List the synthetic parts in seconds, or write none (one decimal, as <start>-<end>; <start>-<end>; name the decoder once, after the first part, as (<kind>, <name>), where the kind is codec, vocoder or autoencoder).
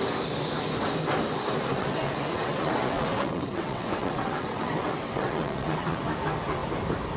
1.7-6.0 (vocoder, WaveNeXt)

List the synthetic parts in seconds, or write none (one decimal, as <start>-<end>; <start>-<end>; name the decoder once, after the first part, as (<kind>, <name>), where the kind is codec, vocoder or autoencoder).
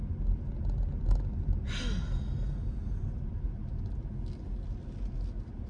none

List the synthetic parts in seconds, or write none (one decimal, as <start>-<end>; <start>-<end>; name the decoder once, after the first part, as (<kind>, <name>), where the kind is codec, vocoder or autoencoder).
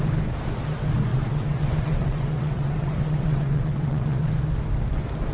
1.1-4.3 (vocoder, WaveNeXt)